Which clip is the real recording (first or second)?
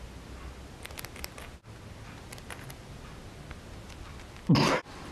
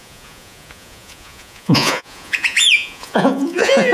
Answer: first